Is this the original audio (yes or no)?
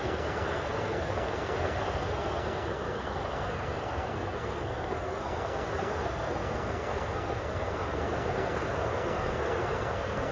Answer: no